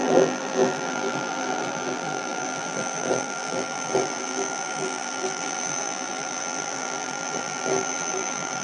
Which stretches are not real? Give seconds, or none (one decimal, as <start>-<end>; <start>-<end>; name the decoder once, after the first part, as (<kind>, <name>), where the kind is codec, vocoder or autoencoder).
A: 0.0-8.6 (vocoder, BigVGAN v2)